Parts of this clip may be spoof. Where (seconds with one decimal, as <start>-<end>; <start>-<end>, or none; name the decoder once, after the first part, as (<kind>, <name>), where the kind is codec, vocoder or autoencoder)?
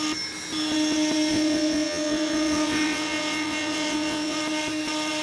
1.3-4.4 (vocoder, WaveNeXt)